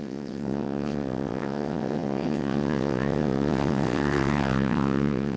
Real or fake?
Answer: fake